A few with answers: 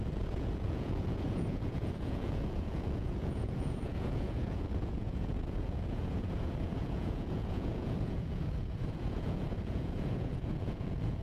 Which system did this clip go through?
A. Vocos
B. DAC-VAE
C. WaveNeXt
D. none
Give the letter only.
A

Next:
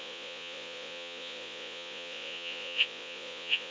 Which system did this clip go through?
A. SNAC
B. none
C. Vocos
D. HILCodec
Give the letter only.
C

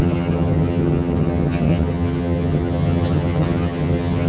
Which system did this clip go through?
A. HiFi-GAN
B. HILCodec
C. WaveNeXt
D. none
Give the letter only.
A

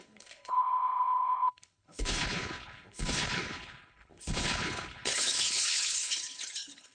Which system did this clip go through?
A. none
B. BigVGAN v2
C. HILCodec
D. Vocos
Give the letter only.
C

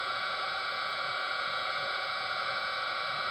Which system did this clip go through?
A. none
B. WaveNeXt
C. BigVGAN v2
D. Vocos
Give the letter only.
D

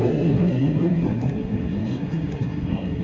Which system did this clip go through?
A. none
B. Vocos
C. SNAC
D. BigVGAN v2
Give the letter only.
C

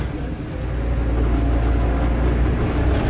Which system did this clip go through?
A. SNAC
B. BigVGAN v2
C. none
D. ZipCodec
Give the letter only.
C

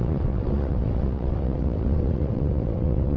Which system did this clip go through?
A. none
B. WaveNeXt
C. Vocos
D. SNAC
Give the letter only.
B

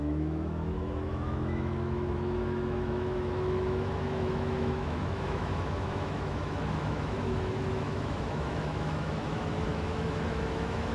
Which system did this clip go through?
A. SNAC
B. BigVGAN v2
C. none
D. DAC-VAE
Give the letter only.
D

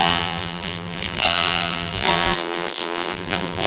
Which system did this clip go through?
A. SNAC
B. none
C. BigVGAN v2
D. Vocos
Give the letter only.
C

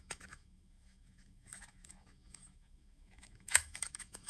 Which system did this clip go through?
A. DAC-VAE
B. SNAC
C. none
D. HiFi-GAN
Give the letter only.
A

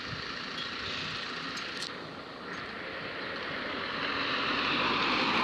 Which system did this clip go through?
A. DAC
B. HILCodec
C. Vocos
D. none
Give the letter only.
D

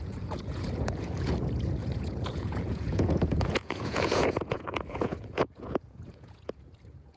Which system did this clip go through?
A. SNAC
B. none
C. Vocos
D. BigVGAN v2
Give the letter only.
C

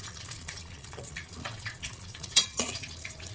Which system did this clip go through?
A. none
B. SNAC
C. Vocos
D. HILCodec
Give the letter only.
C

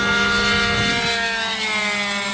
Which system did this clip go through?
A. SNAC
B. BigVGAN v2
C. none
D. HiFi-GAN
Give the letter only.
C